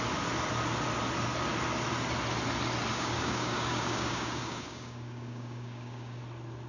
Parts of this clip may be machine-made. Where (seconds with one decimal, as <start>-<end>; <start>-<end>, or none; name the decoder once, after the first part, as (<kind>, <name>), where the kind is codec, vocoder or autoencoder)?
2.9-6.2 (codec, DAC)